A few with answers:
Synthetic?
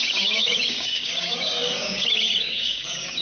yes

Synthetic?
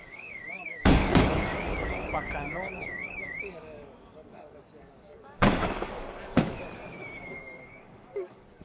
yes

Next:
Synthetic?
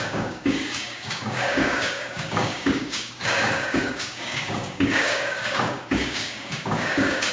yes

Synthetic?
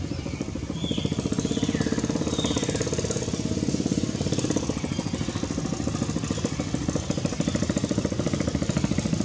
no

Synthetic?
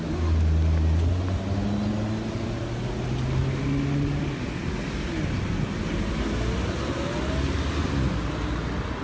no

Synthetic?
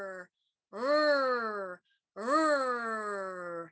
no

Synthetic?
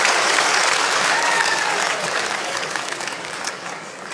yes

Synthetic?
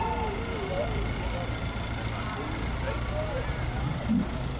no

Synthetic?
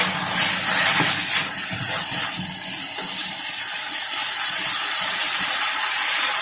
no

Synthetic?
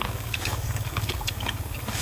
yes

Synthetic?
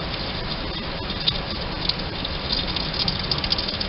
no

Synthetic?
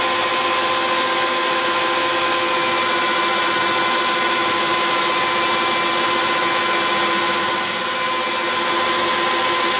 no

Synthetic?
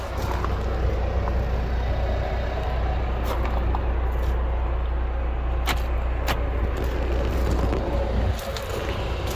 no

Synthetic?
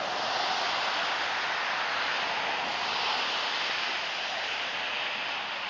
no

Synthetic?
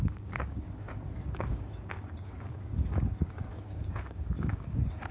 yes